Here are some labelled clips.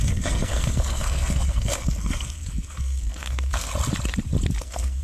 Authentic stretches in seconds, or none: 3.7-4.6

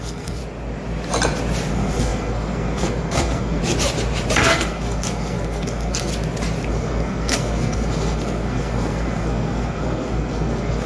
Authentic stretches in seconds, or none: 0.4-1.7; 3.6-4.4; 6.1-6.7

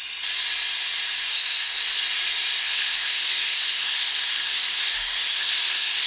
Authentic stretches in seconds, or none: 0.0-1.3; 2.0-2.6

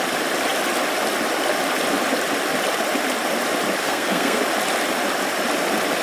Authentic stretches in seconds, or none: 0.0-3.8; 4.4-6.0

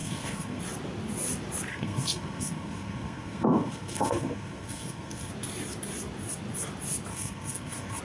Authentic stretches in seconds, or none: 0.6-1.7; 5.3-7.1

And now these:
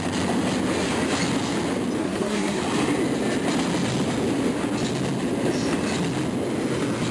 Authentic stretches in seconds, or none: 0.0-2.0; 2.6-7.1

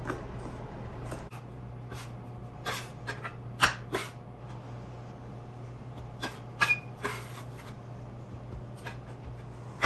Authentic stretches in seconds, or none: 0.0-9.9

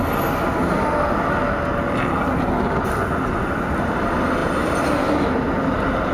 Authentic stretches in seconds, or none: 0.0-6.1